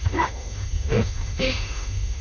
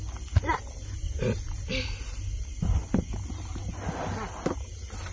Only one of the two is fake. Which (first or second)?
first